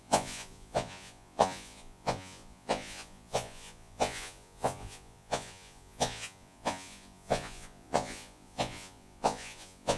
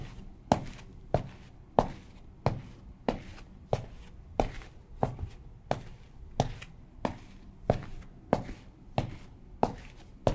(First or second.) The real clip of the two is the second